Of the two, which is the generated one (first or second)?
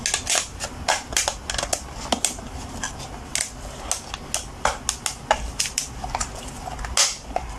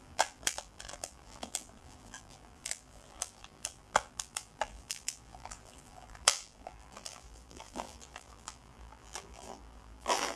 second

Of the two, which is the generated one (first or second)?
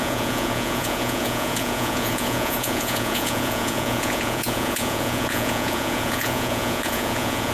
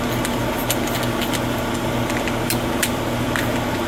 first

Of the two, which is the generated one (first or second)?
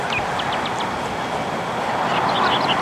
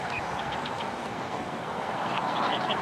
second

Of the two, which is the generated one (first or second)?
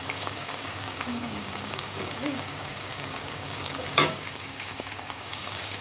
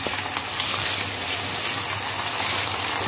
first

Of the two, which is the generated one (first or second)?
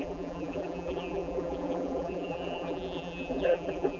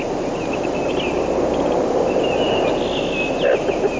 first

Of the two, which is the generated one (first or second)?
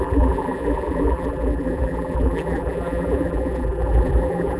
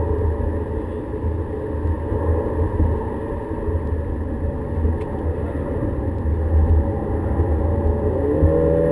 first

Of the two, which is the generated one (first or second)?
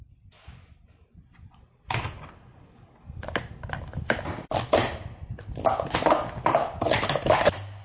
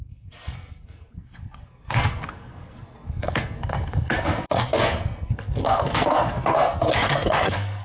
second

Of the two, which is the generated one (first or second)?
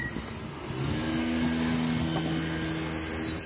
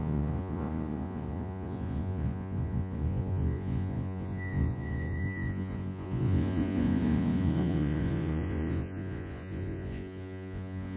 second